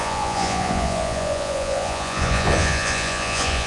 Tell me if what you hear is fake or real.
fake